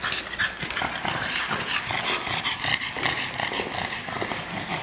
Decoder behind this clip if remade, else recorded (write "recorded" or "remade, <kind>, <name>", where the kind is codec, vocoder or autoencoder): recorded